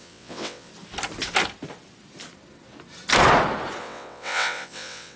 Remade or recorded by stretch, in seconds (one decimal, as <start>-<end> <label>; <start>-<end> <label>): 0.0-0.7 remade; 0.7-3.8 recorded; 3.8-5.2 remade